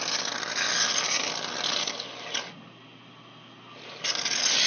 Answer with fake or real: real